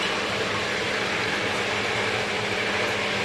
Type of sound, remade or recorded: recorded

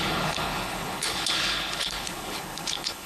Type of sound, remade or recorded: remade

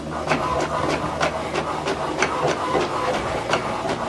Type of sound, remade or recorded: recorded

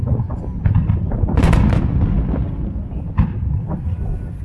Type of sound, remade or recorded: recorded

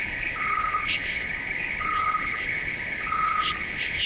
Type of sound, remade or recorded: remade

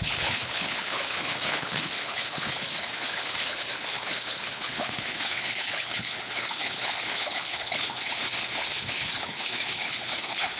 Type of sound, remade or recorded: remade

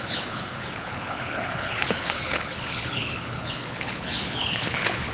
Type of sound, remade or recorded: remade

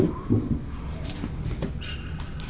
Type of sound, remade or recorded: recorded